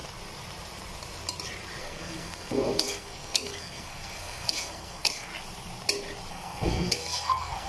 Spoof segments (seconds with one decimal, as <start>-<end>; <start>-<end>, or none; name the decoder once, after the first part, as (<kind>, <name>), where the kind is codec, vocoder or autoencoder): 1.8-5.3 (codec, SNAC); 6.3-7.7